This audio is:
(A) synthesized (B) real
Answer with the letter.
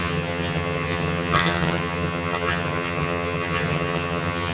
A